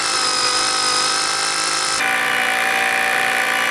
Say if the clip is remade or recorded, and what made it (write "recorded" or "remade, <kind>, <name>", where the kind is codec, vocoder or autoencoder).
recorded